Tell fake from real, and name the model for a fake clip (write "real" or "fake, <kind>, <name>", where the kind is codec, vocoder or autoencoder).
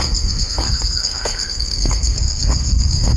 fake, codec, SNAC